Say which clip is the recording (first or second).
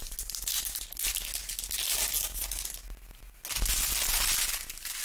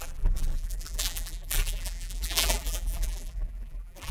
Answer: first